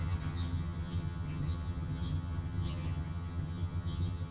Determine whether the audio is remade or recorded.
remade